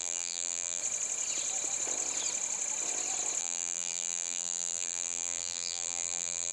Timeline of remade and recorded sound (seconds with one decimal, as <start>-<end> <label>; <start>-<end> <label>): 0.0-0.8 remade; 0.8-3.4 recorded; 3.4-6.5 remade